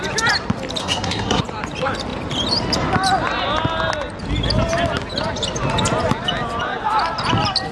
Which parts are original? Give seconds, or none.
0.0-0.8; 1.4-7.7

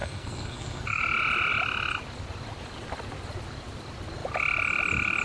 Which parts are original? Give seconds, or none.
1.0-5.2

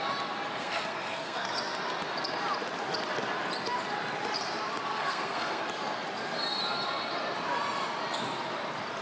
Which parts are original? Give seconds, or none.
0.0-0.5; 1.5-4.9; 5.6-9.0

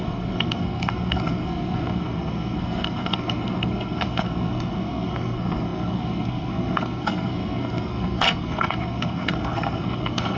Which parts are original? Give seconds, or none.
none

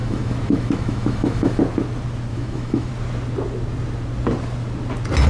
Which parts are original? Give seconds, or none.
1.6-2.3; 2.9-5.3

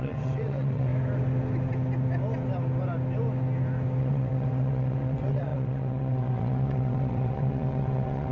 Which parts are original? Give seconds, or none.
0.9-4.0